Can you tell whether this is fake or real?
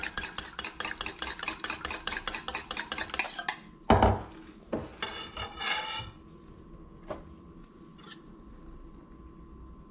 real